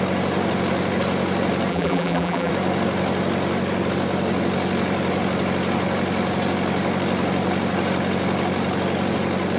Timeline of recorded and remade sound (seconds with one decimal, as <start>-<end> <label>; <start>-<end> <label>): 0.0-1.7 recorded; 1.7-2.5 remade; 2.5-9.6 recorded

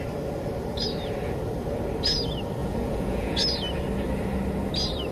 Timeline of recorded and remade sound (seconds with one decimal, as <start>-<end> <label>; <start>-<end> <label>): 0.0-2.6 recorded; 2.6-3.4 remade; 3.4-5.1 recorded

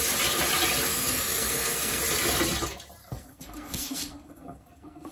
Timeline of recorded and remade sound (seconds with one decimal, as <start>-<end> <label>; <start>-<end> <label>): 0.0-0.9 recorded; 0.9-2.0 remade; 2.0-3.0 recorded; 3.0-5.1 remade

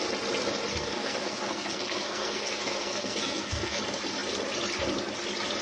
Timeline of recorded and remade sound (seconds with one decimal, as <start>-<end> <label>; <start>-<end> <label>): 0.0-0.7 recorded; 0.7-3.8 remade; 3.8-5.6 recorded

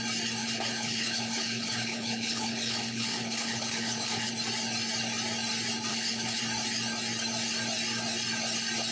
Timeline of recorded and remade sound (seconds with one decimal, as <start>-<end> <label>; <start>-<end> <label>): 0.0-0.4 recorded; 0.4-4.3 remade; 4.3-5.9 recorded; 5.9-6.4 remade; 6.4-8.9 recorded

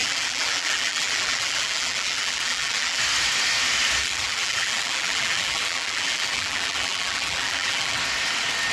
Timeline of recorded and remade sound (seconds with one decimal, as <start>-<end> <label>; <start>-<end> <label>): 0.0-3.0 remade; 3.0-4.0 recorded; 4.0-8.0 remade; 8.0-8.7 recorded